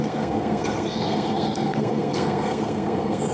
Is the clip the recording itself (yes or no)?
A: no